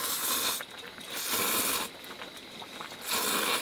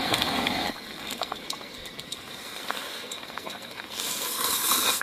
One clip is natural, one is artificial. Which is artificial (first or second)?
second